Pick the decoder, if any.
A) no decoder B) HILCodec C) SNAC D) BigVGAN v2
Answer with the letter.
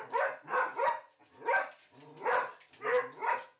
A